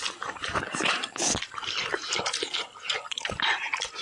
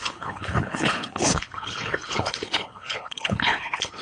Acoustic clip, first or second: first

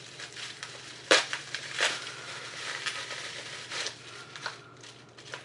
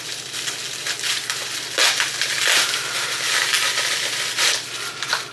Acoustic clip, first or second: second